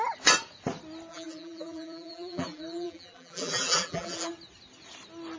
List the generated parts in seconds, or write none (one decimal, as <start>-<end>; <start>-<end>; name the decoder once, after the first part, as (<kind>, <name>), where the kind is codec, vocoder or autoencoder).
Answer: 1.1-4.3 (vocoder, BigVGAN v2)